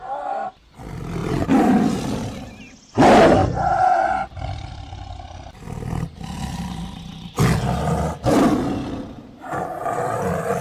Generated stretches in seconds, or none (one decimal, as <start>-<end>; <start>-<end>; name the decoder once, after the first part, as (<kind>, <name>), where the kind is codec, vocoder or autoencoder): none